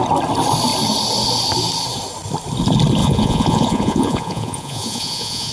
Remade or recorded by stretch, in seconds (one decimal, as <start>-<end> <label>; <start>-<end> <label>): 0.0-3.0 recorded; 3.0-5.5 remade